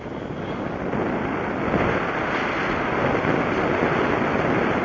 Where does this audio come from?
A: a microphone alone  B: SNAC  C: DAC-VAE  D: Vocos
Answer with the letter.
A